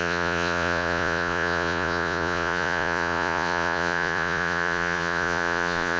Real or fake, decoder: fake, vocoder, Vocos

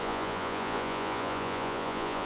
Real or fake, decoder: fake, vocoder, Vocos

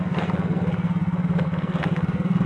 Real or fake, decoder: fake, codec, SNAC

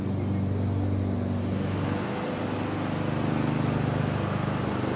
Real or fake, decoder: real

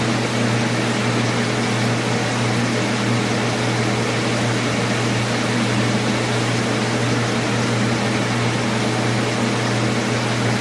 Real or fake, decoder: real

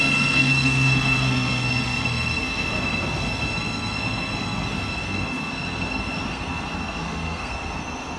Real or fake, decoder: fake, codec, SNAC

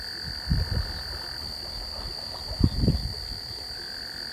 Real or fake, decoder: real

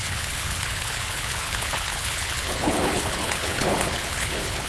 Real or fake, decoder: fake, codec, HILCodec